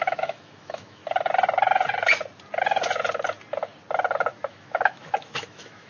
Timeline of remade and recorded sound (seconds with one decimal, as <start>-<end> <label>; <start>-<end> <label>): 0.0-1.0 remade; 1.0-4.5 recorded; 4.5-5.9 remade

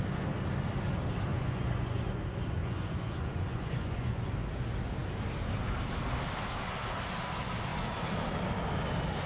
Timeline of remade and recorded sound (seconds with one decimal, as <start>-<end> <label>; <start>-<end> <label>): 0.0-1.3 recorded; 1.3-2.2 remade; 2.2-2.6 recorded; 2.6-4.3 remade; 4.3-9.3 recorded

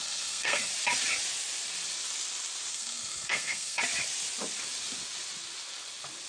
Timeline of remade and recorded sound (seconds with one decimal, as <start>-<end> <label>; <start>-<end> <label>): 0.0-0.7 remade; 0.7-2.7 recorded; 2.7-3.8 remade; 3.8-6.3 recorded

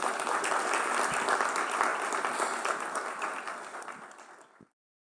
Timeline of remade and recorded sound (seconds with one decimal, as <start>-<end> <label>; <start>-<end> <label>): 0.0-1.9 recorded; 1.9-5.2 remade

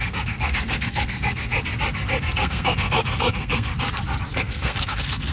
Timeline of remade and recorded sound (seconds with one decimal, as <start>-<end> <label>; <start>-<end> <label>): 0.0-1.5 remade; 1.5-2.2 recorded; 2.2-3.7 remade; 3.7-4.3 recorded; 4.3-5.3 remade